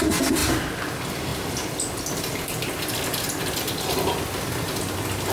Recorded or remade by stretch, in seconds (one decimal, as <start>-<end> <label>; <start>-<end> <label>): 0.0-5.3 recorded